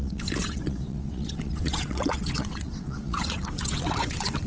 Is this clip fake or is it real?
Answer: fake